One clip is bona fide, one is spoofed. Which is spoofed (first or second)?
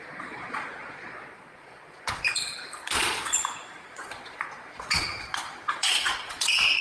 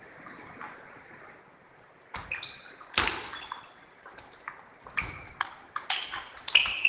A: first